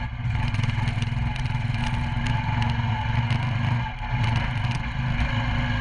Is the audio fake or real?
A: real